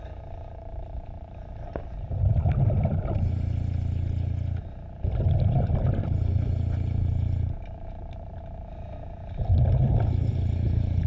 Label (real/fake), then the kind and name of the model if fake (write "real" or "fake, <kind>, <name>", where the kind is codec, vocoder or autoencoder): real